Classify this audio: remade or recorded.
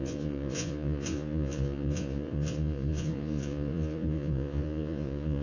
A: remade